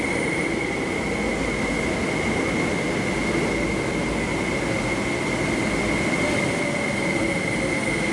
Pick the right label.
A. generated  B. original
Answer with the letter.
B